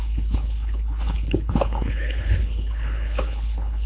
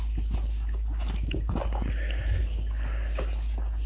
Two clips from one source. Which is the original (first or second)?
second